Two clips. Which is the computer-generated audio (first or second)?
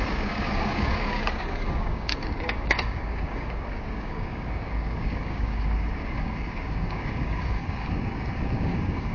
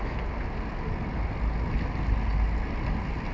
first